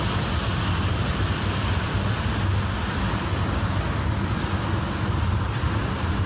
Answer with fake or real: real